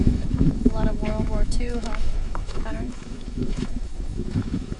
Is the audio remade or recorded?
remade